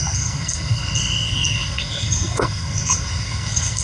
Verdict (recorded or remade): remade